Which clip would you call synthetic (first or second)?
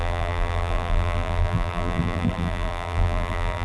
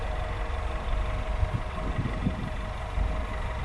first